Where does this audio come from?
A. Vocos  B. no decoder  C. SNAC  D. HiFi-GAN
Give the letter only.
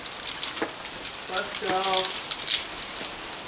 B